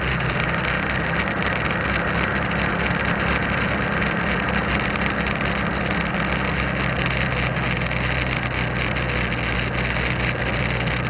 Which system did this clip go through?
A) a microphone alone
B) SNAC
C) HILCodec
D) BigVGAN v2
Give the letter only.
A